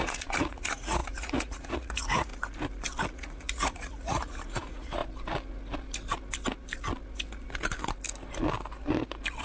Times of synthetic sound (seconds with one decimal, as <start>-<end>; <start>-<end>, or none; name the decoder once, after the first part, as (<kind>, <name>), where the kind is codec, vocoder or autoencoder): 0.0-2.3 (vocoder, Vocos); 3.1-5.0